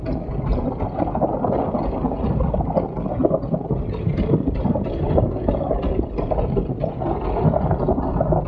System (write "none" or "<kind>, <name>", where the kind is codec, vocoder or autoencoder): none